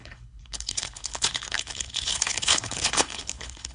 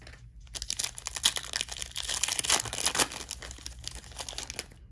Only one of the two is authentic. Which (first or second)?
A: second